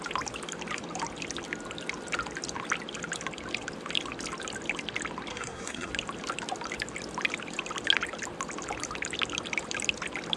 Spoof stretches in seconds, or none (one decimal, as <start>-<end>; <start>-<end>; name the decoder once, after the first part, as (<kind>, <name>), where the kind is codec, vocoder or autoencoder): 5.3-5.9 (codec, SNAC)